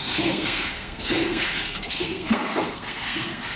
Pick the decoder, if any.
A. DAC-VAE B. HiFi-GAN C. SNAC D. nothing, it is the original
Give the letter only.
C